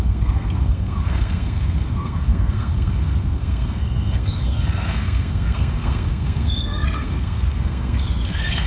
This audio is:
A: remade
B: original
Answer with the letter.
A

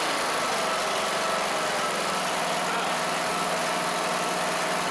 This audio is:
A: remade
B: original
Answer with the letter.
B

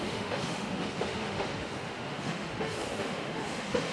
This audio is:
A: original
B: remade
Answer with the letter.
B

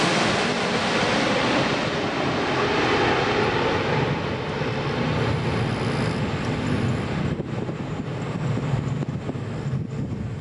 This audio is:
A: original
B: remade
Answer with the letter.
A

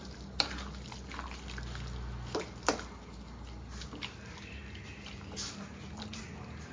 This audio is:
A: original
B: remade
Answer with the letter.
A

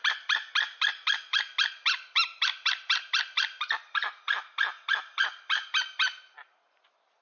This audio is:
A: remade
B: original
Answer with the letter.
A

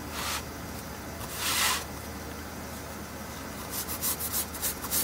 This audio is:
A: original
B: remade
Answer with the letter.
A